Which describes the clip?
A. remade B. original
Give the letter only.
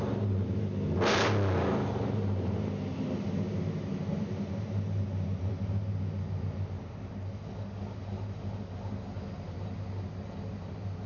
B